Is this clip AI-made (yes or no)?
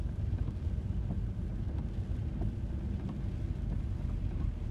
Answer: no